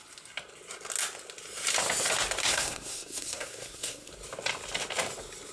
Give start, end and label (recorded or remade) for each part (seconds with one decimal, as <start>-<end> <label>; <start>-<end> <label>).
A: 0.0-2.5 recorded; 2.5-4.1 remade; 4.1-5.5 recorded